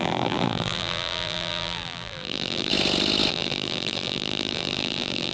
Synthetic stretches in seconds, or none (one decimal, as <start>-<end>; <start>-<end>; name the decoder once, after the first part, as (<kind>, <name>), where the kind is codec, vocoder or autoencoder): 0.0-2.7 (vocoder, BigVGAN v2); 3.3-5.3